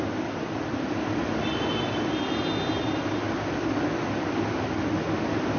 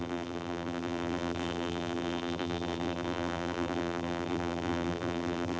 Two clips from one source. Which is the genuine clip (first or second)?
first